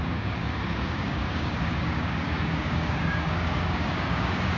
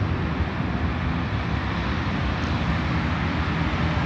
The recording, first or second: second